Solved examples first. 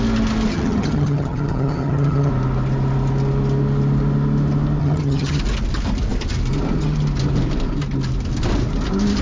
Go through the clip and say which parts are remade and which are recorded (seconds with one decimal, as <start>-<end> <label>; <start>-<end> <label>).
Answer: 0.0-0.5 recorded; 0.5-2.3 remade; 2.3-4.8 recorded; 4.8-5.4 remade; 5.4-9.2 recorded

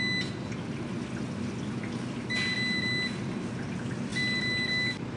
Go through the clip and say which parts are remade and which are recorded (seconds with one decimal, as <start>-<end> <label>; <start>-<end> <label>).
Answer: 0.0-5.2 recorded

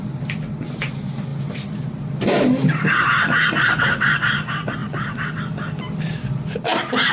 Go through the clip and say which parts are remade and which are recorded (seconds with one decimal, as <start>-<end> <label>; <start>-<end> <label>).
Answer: 0.0-4.8 recorded; 4.8-5.4 remade; 5.4-7.1 recorded